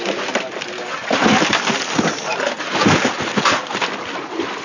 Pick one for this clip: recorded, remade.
recorded